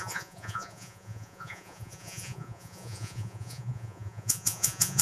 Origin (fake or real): fake